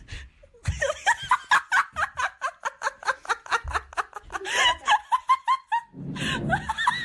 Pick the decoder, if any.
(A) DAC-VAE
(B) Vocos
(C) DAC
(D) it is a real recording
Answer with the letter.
D